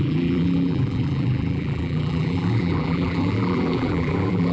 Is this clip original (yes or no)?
no